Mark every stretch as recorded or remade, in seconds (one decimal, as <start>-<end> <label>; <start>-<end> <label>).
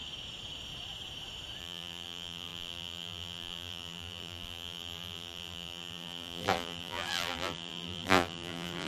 0.0-1.6 recorded; 1.6-8.9 remade